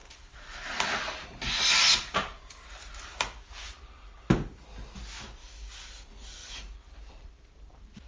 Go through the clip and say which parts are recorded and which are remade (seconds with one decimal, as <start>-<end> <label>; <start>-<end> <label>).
0.0-6.4 recorded; 6.4-8.1 remade